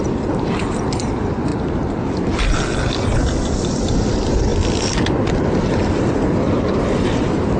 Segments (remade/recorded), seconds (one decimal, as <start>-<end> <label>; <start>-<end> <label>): 0.0-7.6 recorded